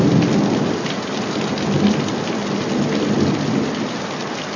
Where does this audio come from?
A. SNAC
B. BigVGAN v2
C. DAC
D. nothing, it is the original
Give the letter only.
D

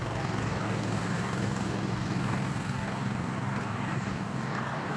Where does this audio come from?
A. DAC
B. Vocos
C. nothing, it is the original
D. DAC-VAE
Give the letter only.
A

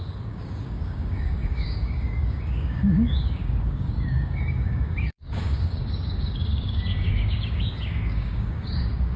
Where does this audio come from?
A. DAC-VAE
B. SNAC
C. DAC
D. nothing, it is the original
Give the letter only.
C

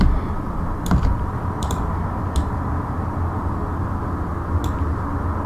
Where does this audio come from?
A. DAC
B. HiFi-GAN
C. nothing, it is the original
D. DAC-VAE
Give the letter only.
C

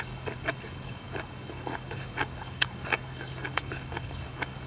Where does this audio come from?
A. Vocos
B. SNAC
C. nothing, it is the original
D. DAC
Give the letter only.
D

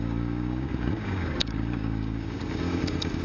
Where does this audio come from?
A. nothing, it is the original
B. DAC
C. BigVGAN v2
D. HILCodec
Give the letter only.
B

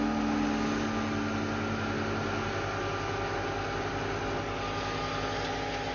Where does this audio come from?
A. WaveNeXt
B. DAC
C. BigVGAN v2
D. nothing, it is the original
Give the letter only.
D